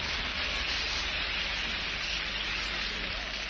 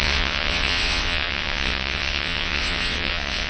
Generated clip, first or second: second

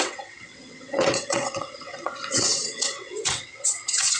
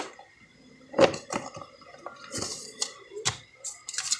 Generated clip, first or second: first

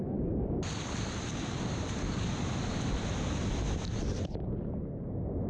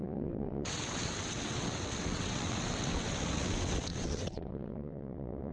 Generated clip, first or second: second